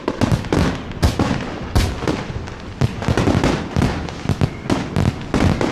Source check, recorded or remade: recorded